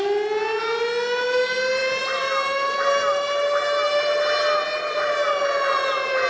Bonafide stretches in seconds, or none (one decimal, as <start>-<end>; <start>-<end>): 0.0-6.3